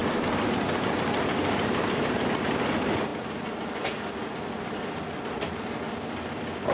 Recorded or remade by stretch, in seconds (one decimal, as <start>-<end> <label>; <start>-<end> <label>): 0.0-6.7 recorded